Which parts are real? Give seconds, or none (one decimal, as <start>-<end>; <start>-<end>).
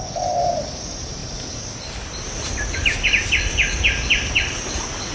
0.0-5.1